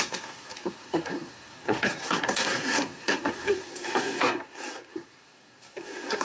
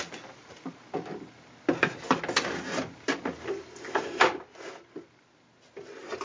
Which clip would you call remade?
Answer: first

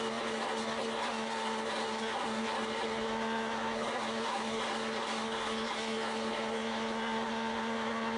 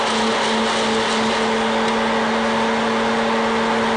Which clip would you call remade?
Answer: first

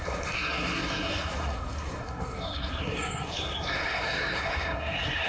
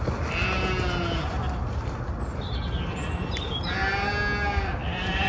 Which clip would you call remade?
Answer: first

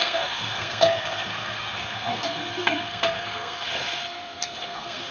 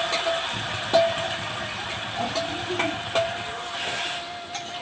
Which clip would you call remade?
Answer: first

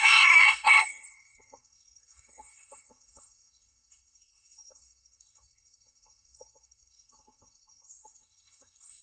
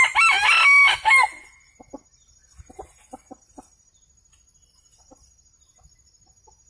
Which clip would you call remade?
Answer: first